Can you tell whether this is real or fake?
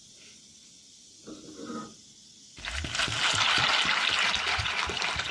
real